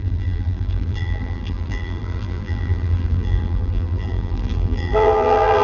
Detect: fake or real fake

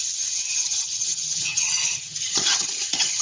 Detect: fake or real fake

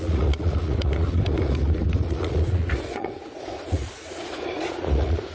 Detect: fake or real fake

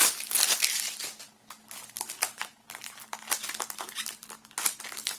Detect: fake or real real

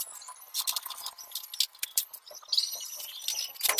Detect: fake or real real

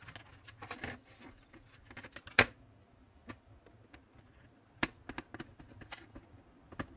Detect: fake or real real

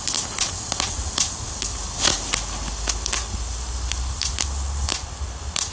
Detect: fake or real real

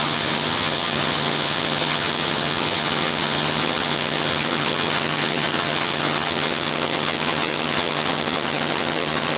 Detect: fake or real fake